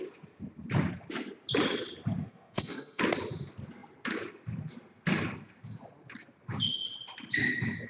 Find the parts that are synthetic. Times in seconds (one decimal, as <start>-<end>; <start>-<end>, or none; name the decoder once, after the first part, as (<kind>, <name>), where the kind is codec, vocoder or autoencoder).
2.2-3.0 (codec, SNAC)